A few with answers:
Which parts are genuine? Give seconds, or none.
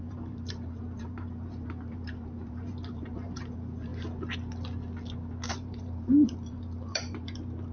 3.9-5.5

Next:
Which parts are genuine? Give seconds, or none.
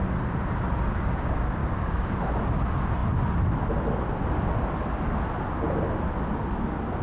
0.0-1.6; 2.1-7.0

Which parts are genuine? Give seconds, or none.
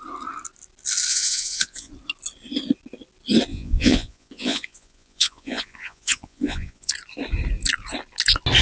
0.0-1.1; 1.9-3.5; 6.9-8.6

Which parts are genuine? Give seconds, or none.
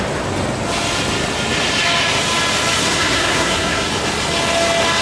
0.0-2.8; 3.9-5.0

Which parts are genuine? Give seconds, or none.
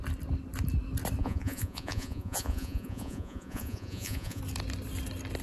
0.0-1.2; 4.4-5.4